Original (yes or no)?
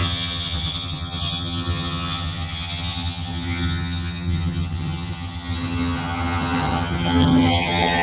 no